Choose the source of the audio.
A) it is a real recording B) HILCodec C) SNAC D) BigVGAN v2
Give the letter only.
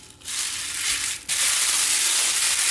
A